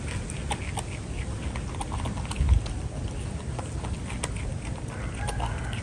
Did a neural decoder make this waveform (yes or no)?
no